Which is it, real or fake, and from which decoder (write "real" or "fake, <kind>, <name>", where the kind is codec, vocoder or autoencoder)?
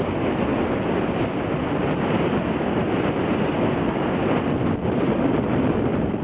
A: real